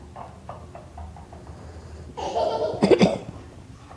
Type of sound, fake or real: real